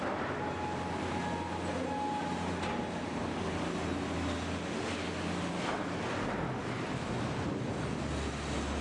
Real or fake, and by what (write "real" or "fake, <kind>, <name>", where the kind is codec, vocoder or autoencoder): real